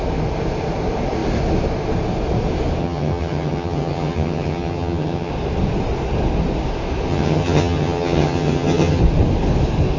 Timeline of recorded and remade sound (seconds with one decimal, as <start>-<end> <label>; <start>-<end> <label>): 0.0-2.8 recorded; 2.8-5.3 remade; 5.3-7.1 recorded; 7.1-9.0 remade; 9.0-10.0 recorded